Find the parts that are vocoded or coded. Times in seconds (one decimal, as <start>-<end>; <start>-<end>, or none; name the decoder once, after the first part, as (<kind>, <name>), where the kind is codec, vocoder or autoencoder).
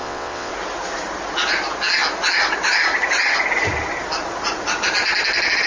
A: 0.0-0.5 (vocoder, WaveNeXt)